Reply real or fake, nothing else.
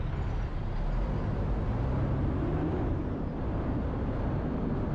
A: real